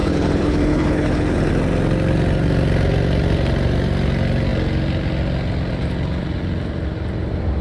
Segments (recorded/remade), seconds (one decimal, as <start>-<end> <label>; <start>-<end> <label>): 0.0-1.5 remade; 1.5-7.6 recorded